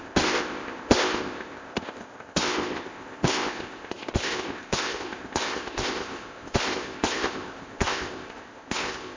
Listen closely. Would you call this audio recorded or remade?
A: remade